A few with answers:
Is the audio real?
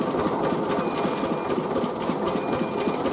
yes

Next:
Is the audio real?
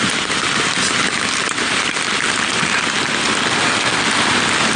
yes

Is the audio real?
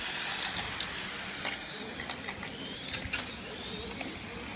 yes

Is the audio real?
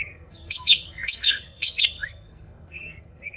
no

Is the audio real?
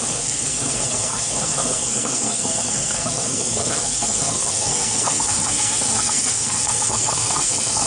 no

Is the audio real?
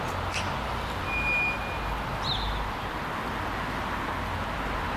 yes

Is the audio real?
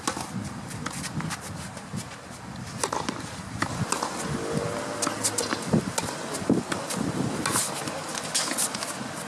yes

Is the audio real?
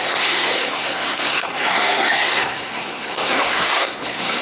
no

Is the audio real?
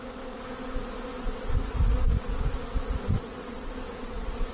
yes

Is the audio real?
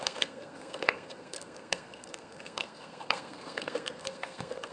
no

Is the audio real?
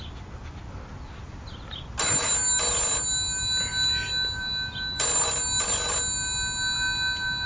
yes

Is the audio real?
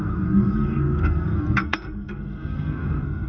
no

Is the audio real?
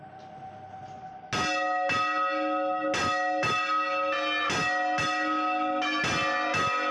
yes